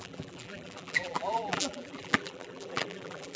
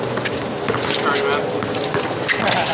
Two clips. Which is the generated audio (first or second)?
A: first